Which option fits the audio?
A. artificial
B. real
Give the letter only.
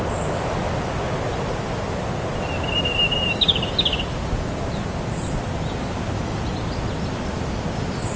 B